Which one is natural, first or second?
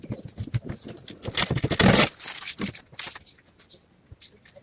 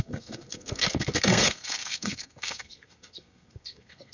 first